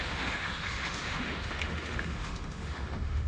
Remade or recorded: remade